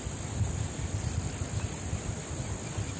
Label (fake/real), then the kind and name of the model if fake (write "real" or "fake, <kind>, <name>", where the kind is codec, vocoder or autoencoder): real